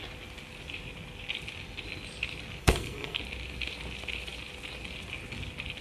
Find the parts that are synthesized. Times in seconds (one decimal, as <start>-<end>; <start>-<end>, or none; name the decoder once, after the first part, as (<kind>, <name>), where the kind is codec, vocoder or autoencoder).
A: 2.6-3.2 (codec, SNAC)